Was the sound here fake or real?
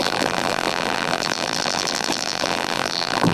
fake